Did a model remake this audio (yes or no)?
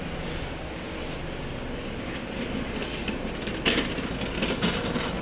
no